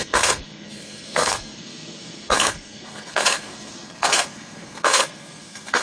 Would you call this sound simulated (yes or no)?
yes